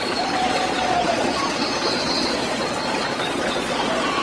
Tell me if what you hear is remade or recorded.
remade